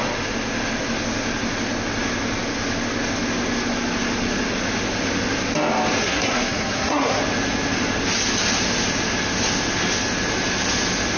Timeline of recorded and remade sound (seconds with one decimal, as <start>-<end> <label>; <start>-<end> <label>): 0.0-6.0 recorded; 6.0-7.2 remade; 7.2-11.2 recorded